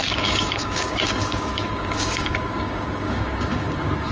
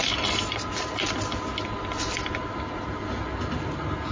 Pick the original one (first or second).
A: second